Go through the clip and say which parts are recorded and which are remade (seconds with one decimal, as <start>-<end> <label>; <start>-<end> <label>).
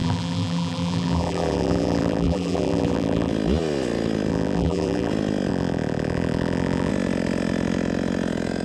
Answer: 0.0-3.3 remade; 3.3-4.3 recorded; 4.3-5.1 remade; 5.1-5.5 recorded; 5.5-6.9 remade; 6.9-8.6 recorded